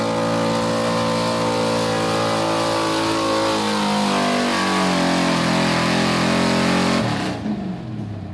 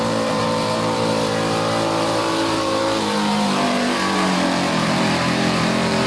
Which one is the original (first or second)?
first